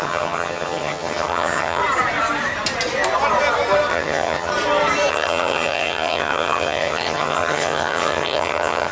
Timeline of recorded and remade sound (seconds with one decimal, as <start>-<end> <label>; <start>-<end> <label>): 0.0-1.8 remade; 1.8-3.9 recorded; 3.9-4.5 remade; 4.5-5.1 recorded; 5.1-8.9 remade